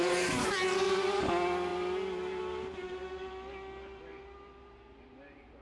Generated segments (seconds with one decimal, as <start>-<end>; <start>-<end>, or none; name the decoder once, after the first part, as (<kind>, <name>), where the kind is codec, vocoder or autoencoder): none